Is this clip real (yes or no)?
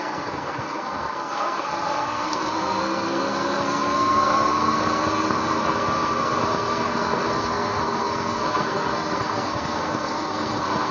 no